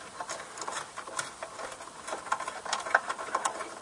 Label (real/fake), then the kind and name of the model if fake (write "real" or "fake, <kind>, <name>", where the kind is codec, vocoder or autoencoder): real